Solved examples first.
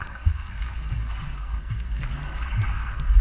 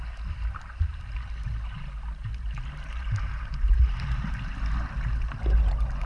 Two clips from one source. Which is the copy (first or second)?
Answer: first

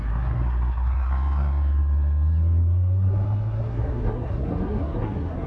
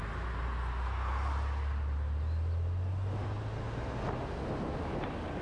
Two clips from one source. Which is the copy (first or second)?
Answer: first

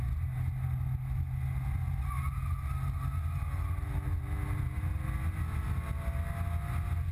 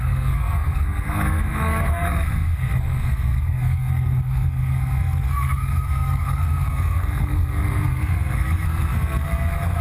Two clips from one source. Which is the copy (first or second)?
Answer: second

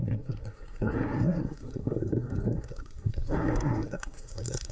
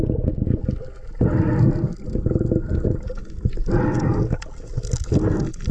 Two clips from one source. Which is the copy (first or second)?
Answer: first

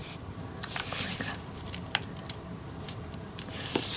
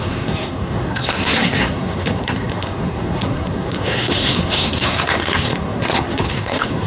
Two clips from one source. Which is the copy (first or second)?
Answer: second